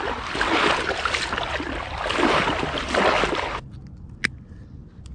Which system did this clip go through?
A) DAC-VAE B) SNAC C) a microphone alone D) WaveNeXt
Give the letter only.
C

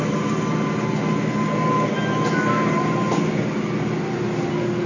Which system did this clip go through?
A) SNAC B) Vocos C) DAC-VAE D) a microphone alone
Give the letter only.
D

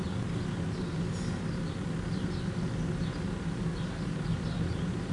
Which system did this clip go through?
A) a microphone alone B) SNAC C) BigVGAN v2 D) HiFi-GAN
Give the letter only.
A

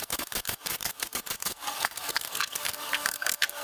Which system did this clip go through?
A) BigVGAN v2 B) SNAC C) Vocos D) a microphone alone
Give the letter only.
B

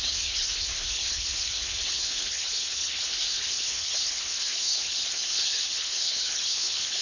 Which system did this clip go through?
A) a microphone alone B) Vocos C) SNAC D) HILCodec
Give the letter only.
D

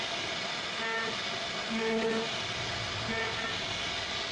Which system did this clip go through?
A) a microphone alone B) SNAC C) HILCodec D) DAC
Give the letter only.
A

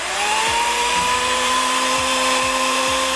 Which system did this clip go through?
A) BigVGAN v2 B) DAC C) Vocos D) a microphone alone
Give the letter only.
A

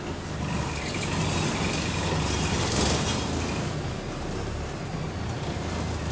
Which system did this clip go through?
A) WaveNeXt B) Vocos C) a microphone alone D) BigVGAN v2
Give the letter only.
C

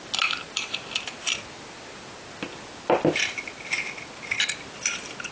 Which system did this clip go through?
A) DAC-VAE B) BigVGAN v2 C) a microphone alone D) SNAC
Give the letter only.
C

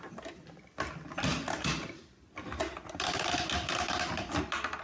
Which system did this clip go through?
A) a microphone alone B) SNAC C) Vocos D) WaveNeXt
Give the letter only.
A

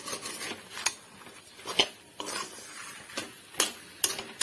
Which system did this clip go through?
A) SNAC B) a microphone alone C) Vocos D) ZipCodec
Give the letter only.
B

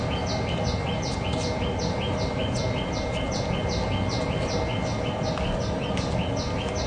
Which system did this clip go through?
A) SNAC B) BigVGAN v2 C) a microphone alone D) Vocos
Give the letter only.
C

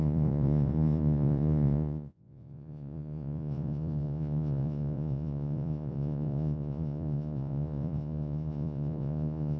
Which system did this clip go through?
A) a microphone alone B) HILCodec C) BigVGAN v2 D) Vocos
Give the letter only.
D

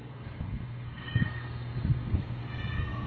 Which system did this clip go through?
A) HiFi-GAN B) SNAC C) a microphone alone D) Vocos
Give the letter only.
B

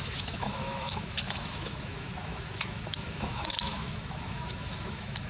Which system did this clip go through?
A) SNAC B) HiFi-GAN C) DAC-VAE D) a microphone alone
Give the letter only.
C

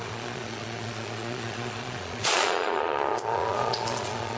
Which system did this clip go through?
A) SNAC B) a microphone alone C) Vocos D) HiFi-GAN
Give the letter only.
C